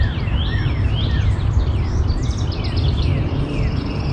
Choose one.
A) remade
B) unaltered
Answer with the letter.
B